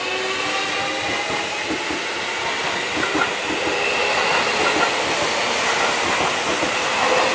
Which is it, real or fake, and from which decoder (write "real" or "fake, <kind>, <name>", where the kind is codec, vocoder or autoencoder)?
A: real